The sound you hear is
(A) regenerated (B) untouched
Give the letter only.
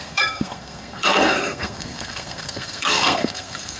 A